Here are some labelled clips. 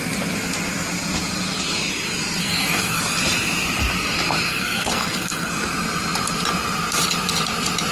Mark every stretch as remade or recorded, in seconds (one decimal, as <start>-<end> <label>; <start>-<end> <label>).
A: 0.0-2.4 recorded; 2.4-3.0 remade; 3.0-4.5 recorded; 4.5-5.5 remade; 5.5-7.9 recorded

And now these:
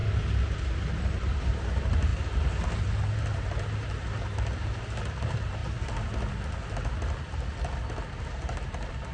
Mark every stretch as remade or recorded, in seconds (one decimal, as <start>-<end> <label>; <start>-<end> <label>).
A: 0.0-1.4 recorded; 1.4-5.6 remade; 5.6-8.2 recorded; 8.2-9.1 remade

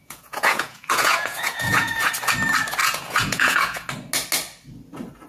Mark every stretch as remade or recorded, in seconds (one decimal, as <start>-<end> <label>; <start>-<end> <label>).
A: 0.0-2.1 remade; 2.1-2.8 recorded; 2.8-3.9 remade; 3.9-5.3 recorded

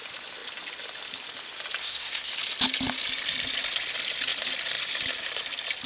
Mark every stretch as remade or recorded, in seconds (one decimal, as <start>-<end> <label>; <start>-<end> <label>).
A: 0.0-1.8 recorded; 1.8-2.3 remade; 2.3-5.9 recorded

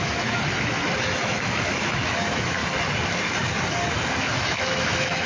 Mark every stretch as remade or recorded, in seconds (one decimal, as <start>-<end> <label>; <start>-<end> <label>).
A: 0.0-2.6 remade; 2.6-4.2 recorded; 4.2-5.3 remade

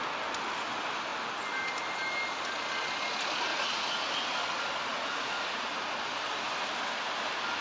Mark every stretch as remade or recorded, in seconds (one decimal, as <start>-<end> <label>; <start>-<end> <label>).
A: 0.0-3.5 recorded; 3.5-4.1 remade; 4.1-4.9 recorded; 4.9-5.7 remade; 5.7-7.6 recorded

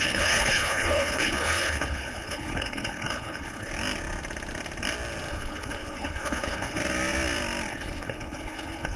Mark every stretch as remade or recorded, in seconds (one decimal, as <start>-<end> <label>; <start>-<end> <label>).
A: 0.0-3.7 remade; 3.7-5.3 recorded; 5.3-6.8 remade; 6.8-7.7 recorded; 7.7-9.0 remade

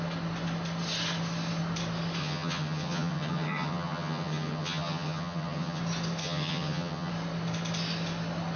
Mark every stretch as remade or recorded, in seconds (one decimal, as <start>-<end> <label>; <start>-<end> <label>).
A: 0.0-2.2 recorded; 2.2-5.8 remade; 5.8-6.2 recorded; 6.2-7.1 remade; 7.1-8.6 recorded